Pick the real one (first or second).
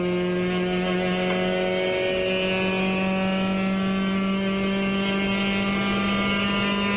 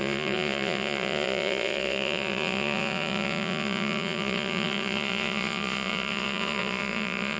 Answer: first